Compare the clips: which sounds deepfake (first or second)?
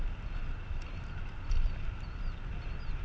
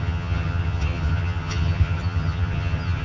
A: second